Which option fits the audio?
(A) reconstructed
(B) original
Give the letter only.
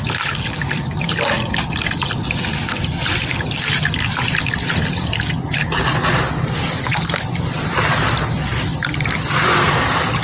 B